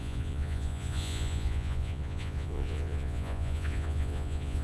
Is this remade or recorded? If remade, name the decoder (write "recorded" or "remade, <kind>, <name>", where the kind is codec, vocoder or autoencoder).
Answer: remade, vocoder, Vocos